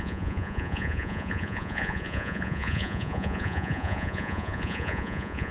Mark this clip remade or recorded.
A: remade